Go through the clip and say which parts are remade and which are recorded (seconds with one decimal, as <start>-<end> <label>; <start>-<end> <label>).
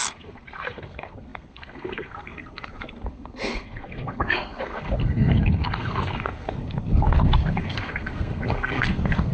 0.0-9.3 remade